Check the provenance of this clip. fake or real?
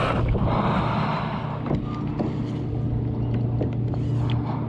real